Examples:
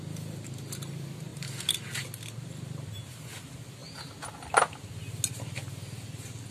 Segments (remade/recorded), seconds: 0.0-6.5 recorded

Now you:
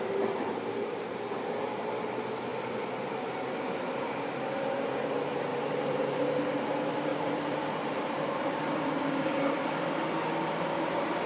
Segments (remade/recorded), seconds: 0.0-5.5 recorded; 5.5-6.2 remade; 6.2-7.1 recorded; 7.1-9.6 remade; 9.6-11.3 recorded

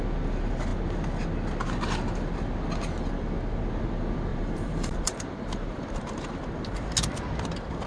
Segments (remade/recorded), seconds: 0.0-4.3 recorded; 4.3-6.3 remade; 6.3-7.9 recorded